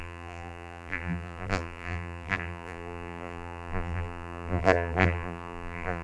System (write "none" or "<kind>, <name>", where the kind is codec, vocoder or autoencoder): vocoder, BigVGAN v2